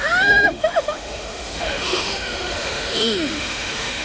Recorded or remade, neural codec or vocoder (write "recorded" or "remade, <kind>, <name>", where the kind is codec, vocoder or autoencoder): remade, autoencoder, DAC-VAE